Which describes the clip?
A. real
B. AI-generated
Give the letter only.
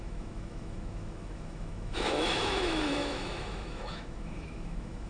B